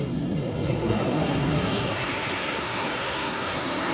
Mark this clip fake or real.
fake